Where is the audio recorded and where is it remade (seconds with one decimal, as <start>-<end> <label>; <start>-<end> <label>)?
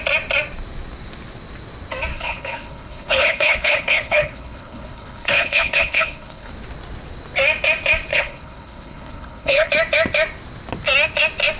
0.0-2.1 recorded; 2.1-6.5 remade; 6.5-8.1 recorded; 8.1-9.7 remade; 9.7-11.6 recorded